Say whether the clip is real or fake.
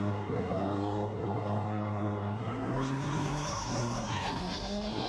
fake